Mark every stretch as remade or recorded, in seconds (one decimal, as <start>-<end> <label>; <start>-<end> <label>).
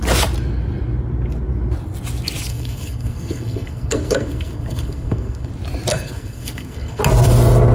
0.0-2.5 recorded; 2.5-5.5 remade; 5.5-5.9 recorded; 5.9-7.0 remade; 7.0-7.7 recorded